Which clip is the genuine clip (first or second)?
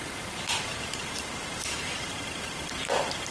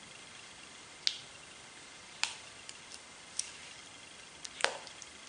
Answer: second